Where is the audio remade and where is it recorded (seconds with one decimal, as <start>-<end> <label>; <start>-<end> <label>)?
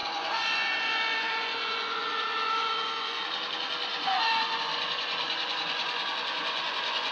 0.0-3.2 remade; 3.2-3.9 recorded; 3.9-7.1 remade